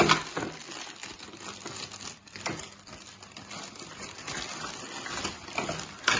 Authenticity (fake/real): real